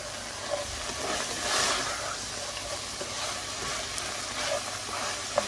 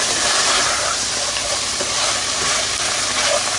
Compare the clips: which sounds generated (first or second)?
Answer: second